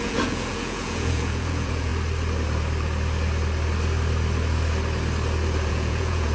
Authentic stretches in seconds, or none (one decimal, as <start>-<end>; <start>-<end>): 1.9-5.7